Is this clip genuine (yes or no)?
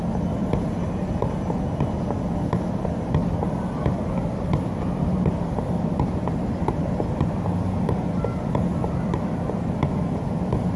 yes